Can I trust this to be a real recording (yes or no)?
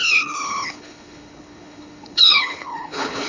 no